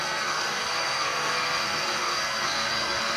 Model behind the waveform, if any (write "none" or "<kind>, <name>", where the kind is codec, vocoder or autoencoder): codec, SNAC